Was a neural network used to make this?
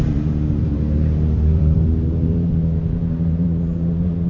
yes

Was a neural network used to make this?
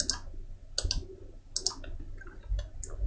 no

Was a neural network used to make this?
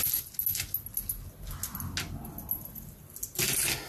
no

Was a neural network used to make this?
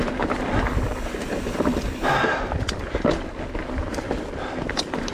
no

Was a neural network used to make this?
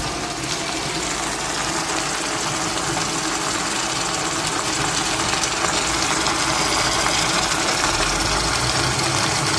no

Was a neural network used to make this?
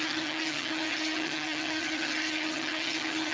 yes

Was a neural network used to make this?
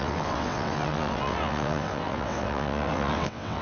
yes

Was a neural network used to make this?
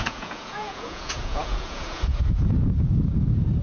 yes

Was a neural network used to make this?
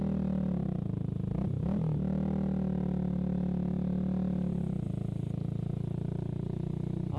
no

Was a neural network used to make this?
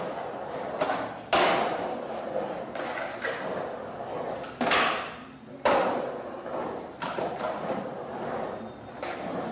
no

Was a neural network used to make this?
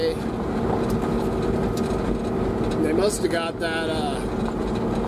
no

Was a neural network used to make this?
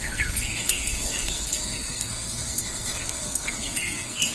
yes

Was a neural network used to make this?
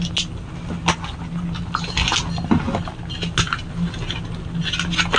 no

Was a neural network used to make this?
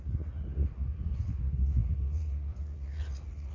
yes